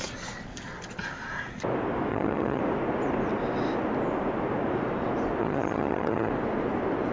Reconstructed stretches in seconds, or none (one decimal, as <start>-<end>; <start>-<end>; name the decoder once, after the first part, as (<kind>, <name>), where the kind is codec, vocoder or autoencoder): 2.1-2.6 (vocoder, HiFi-GAN); 5.4-6.3